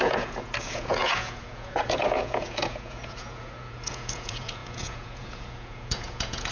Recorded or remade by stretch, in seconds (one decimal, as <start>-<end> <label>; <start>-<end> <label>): 0.0-6.5 remade